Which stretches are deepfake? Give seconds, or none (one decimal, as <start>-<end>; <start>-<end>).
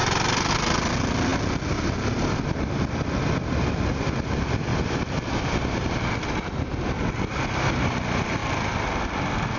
none